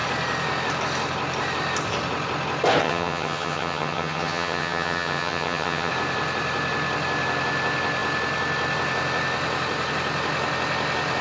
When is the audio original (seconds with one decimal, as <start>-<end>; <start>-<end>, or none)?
0.0-2.8; 5.9-11.2

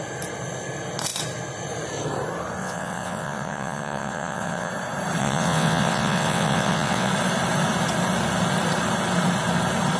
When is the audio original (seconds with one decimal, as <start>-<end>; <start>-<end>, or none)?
0.0-2.6; 4.7-5.2; 7.1-10.0

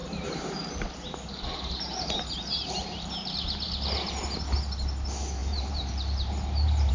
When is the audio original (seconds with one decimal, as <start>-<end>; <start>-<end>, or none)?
4.1-5.4

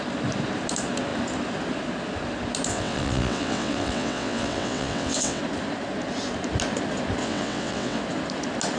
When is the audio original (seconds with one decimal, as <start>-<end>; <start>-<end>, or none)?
0.0-2.7; 5.4-7.2; 8.0-8.8